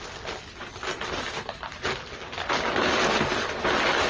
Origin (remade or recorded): recorded